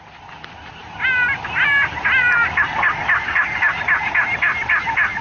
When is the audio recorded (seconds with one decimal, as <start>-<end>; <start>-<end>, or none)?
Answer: 0.0-5.2